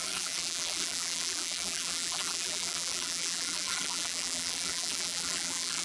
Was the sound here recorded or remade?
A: remade